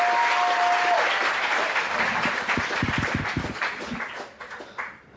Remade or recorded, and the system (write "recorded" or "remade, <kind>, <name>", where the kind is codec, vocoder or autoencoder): recorded